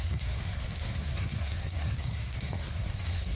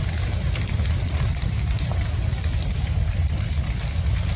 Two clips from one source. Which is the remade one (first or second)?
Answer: first